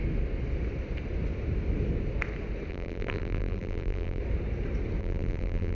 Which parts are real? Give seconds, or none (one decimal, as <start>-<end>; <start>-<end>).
0.0-2.7; 4.2-5.0